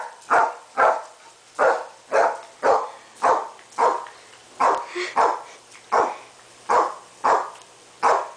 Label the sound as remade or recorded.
recorded